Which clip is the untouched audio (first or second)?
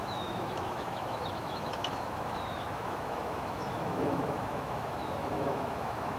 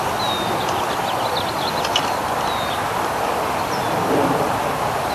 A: second